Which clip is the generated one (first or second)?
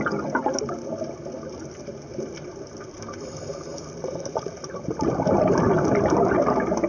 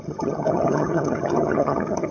second